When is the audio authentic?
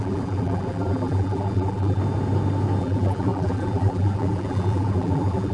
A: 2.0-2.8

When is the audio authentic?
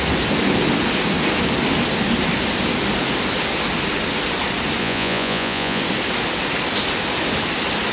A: 0.0-4.8; 5.8-7.9